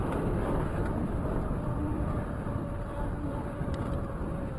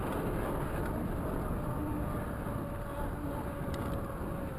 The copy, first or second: first